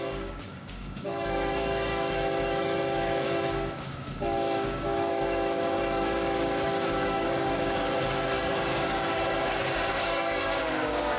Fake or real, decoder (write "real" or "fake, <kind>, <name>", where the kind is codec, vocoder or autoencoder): fake, codec, DAC